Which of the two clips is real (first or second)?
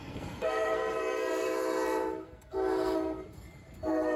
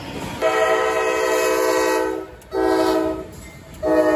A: second